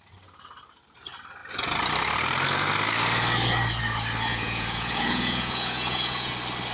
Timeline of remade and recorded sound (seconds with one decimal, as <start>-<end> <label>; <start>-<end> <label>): 0.0-4.3 recorded; 4.3-6.3 remade; 6.3-6.7 recorded